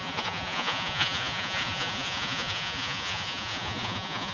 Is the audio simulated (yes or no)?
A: yes